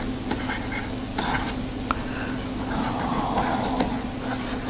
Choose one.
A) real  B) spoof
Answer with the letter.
A